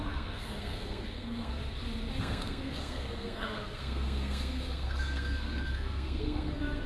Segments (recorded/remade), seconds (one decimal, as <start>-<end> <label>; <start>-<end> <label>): 0.0-1.6 remade; 1.6-2.2 recorded; 2.2-6.9 remade